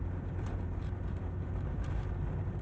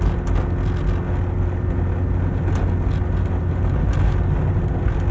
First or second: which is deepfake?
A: first